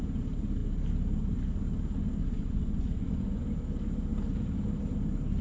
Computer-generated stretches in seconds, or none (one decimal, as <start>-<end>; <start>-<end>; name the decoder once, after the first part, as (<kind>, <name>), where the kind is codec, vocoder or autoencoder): 2.2-3.4 (vocoder, Vocos)